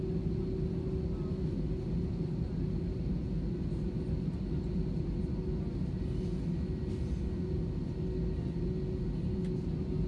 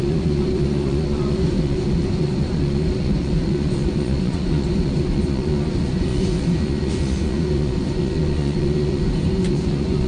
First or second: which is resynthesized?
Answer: second